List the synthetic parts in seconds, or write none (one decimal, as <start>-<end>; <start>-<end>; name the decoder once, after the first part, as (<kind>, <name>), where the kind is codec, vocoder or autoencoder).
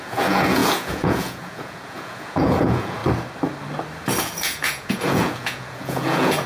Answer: 0.0-3.0 (vocoder, Vocos); 4.2-6.5